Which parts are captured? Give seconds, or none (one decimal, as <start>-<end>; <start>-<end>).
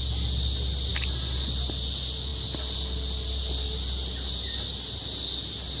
0.0-5.8